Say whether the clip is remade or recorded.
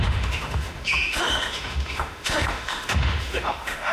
remade